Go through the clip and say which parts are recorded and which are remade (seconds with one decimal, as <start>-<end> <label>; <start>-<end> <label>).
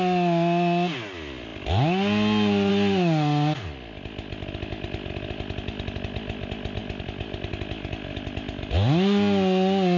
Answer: 0.0-10.0 recorded